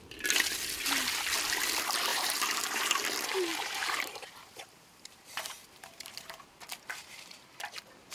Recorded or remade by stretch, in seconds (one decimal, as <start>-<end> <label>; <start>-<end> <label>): 0.0-2.1 recorded; 2.1-2.9 remade; 2.9-3.5 recorded; 3.5-7.4 remade; 7.4-8.1 recorded